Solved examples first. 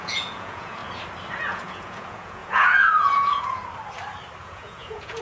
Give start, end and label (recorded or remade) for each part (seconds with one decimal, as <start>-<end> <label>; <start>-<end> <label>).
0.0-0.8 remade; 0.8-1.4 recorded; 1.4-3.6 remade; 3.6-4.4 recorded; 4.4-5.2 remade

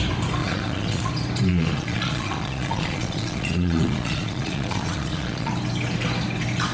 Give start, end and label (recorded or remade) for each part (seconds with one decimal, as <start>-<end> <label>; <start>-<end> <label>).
0.0-0.4 recorded; 0.4-1.1 remade; 1.1-1.5 recorded; 1.5-5.5 remade; 5.5-6.7 recorded

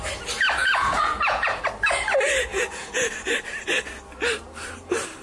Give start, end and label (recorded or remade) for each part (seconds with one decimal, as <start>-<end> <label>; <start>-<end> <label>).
0.0-0.6 recorded; 0.6-1.6 remade; 1.6-2.5 recorded; 2.5-3.1 remade; 3.1-5.2 recorded

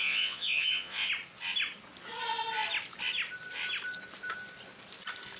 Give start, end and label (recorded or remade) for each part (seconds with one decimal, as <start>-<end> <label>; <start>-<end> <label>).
0.0-1.1 remade; 1.1-5.4 recorded

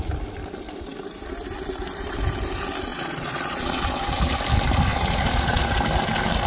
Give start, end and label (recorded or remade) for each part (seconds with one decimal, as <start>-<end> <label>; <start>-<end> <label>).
0.0-2.9 recorded; 2.9-4.2 remade; 4.2-4.9 recorded; 4.9-5.8 remade; 5.8-6.5 recorded